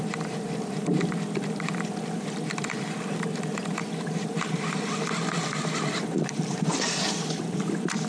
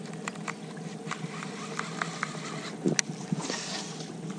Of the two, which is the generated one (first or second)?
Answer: first